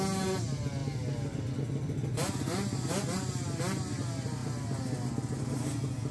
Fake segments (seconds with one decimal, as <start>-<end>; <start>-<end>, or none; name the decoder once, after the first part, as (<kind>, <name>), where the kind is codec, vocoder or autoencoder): none